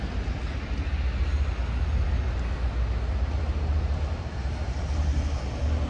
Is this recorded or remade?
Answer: recorded